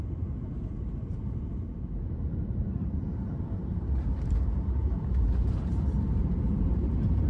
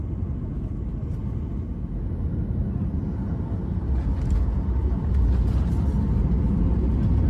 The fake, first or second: first